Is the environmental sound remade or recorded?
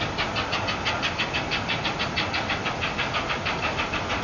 recorded